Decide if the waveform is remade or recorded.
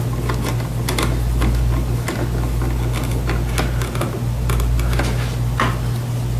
recorded